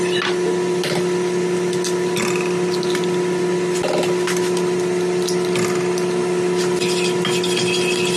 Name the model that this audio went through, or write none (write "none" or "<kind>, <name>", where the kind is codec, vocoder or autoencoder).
none